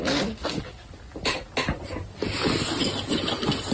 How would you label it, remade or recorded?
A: recorded